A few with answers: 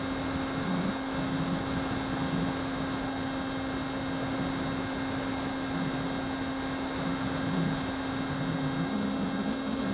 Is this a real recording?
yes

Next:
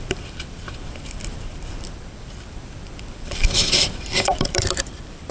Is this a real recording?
no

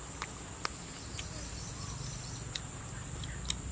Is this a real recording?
yes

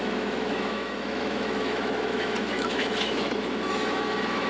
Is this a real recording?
no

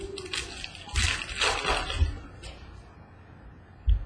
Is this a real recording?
yes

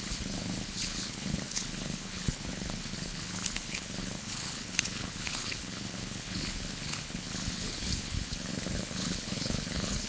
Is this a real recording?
no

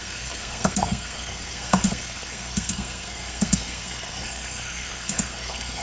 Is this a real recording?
no